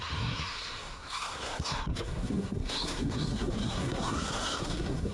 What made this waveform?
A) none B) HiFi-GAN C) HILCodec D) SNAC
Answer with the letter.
D